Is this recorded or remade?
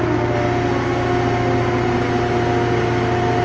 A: recorded